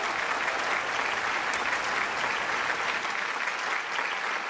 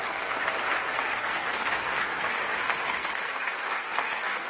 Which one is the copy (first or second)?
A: second